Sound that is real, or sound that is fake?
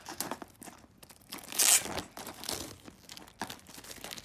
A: real